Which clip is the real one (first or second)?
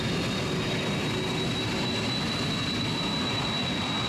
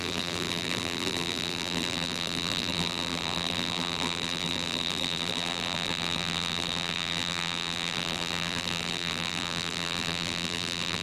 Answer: first